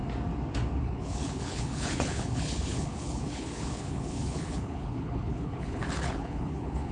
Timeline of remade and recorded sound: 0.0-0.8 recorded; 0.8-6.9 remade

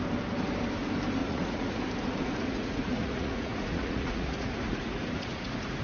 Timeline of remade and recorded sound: 0.0-1.2 recorded; 1.2-1.8 remade; 1.8-2.2 recorded; 2.2-5.8 remade